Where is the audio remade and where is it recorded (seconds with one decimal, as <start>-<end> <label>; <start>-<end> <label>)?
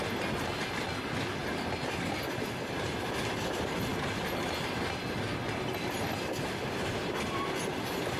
0.0-8.2 recorded